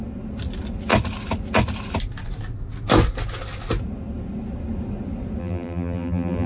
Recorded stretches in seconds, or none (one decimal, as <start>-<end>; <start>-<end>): 0.0-5.4